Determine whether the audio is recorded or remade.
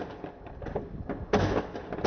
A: recorded